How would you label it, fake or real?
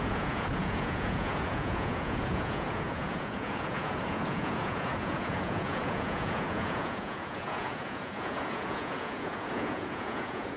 fake